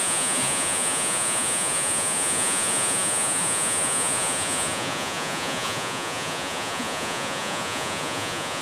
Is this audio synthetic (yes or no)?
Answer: yes